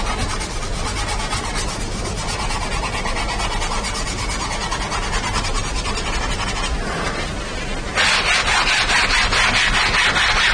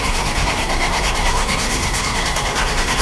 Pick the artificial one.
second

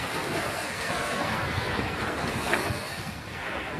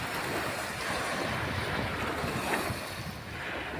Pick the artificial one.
first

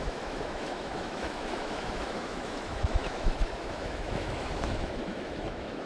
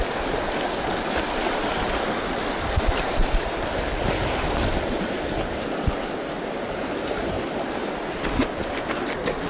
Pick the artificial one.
first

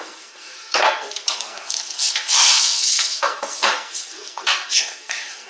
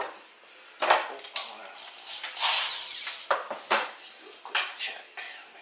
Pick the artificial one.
first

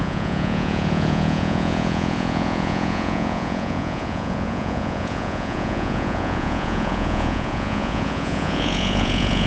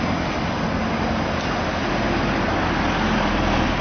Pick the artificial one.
first